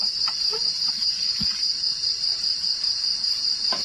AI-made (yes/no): no